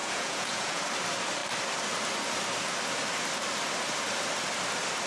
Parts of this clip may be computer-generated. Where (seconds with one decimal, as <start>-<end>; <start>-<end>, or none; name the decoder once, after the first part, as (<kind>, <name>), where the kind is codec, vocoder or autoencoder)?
0.0-0.8 (vocoder, Vocos)